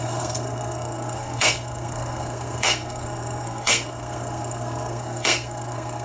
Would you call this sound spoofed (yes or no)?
yes